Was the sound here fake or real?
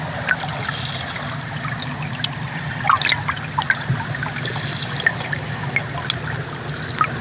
real